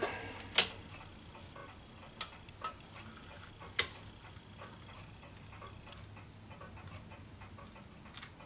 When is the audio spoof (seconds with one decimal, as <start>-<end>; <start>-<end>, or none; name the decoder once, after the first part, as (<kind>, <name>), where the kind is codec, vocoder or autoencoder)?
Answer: none